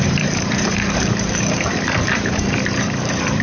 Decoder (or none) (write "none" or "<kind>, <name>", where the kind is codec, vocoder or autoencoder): vocoder, BigVGAN v2